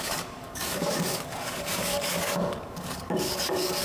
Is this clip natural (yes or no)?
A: no